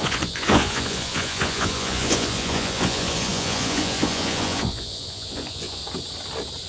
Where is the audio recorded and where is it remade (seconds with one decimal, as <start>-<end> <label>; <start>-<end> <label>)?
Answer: 0.0-5.8 remade; 5.8-6.7 recorded